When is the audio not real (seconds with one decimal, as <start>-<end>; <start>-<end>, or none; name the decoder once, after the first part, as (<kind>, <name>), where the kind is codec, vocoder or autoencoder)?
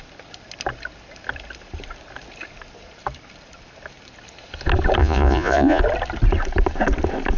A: 5.0-5.8 (vocoder, Vocos)